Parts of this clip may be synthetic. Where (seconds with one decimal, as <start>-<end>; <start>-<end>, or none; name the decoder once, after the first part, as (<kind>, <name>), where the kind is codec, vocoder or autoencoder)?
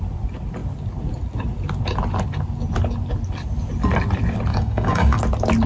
4.5-5.2 (codec, DAC)